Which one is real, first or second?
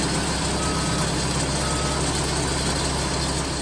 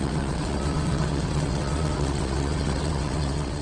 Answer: first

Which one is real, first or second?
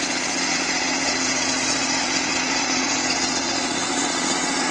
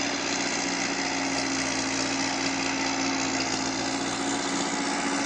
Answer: second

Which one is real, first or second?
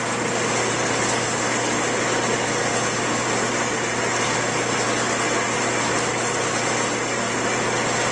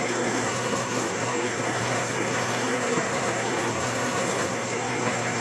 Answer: first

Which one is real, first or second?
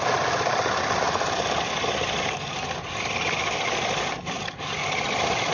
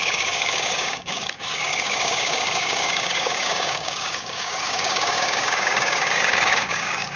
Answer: first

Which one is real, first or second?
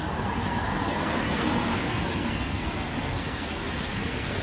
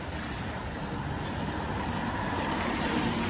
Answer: second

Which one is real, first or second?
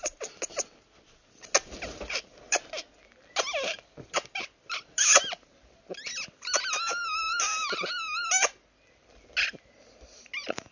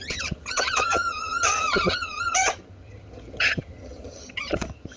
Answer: first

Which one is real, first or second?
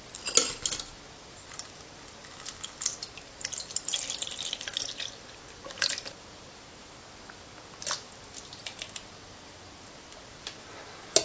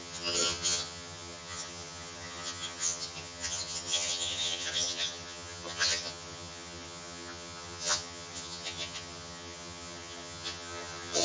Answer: first